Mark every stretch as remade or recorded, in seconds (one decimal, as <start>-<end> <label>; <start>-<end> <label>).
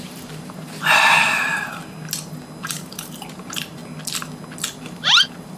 0.0-1.8 remade; 1.8-2.7 recorded; 2.7-3.8 remade; 3.8-4.6 recorded; 4.6-5.6 remade